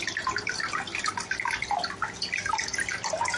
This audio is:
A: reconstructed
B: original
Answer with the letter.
B